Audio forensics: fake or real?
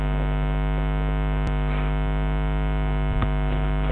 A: real